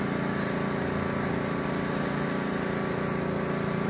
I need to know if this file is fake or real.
real